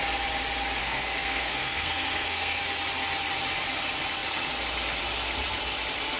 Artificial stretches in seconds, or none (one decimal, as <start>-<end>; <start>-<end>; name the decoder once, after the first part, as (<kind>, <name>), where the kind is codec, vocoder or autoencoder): 0.8-2.6 (codec, SNAC)